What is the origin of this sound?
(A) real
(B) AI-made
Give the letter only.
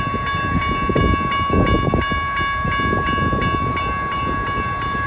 A